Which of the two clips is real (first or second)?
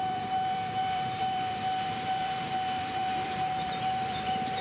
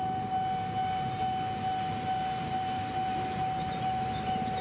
second